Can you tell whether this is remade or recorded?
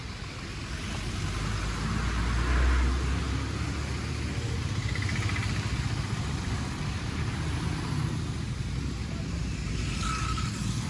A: recorded